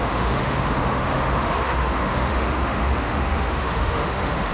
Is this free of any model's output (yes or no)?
no